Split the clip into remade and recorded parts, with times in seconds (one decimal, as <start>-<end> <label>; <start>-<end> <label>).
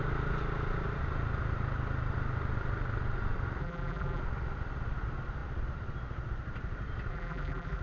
0.0-3.6 recorded; 3.6-4.2 remade; 4.2-7.1 recorded; 7.1-7.8 remade